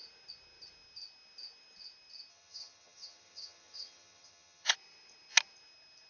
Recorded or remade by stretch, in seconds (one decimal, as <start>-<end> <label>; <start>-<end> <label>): 0.0-2.3 recorded; 2.3-4.7 remade; 4.7-6.1 recorded